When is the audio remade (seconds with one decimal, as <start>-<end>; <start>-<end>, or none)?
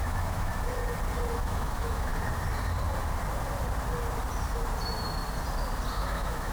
0.0-0.5; 1.4-2.1; 5.9-6.5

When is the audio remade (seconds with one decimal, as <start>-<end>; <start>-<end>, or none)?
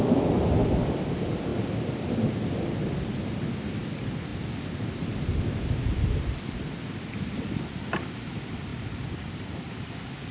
8.7-9.7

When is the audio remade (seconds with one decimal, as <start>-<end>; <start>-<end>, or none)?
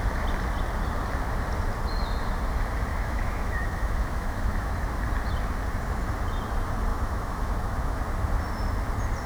2.9-4.7; 6.9-8.0